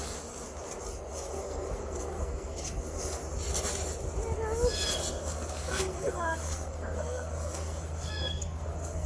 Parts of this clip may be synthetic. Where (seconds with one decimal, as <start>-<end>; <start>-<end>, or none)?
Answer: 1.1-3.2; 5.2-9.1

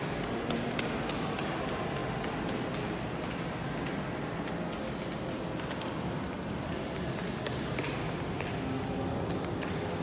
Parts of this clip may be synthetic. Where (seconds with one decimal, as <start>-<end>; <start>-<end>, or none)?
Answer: none

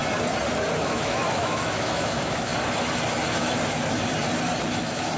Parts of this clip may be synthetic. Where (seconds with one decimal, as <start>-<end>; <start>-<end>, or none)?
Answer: 0.8-2.5; 4.8-5.2

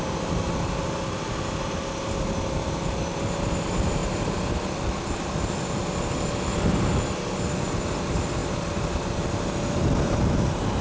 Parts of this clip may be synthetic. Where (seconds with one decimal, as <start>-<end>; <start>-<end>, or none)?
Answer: 4.0-5.8; 8.4-10.8

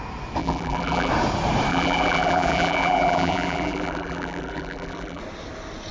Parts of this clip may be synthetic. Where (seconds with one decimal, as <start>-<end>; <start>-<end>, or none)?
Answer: 0.4-1.1; 1.7-5.2

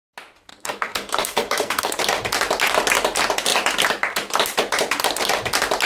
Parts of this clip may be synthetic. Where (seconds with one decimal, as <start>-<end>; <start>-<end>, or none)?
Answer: 0.5-1.9

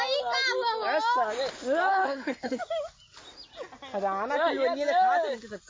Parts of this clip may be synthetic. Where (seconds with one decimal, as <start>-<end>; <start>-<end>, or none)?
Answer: 1.9-2.6

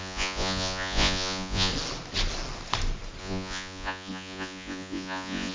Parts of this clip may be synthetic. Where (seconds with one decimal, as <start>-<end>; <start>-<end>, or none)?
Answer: 0.0-1.7; 3.2-5.5